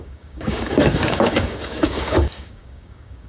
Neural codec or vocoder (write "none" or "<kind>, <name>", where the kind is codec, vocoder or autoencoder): codec, DAC